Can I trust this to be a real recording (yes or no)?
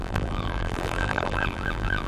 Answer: no